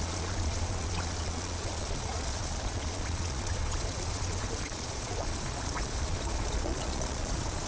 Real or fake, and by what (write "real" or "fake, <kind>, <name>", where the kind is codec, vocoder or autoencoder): fake, vocoder, Vocos